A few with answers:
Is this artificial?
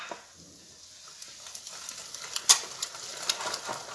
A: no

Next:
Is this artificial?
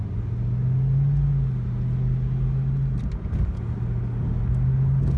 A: no